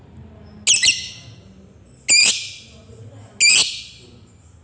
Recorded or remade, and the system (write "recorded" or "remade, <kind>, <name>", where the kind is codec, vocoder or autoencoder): recorded